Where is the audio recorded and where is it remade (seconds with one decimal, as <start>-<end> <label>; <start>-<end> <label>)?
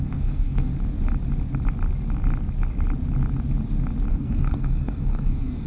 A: 0.0-0.7 remade; 0.7-4.1 recorded; 4.1-5.7 remade